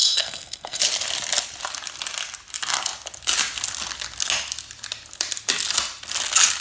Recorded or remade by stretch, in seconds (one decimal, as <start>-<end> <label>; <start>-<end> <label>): 0.0-0.8 remade; 0.8-6.6 recorded